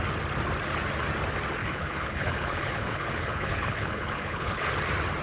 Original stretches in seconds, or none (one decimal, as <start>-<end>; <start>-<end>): 0.0-1.6; 4.7-5.2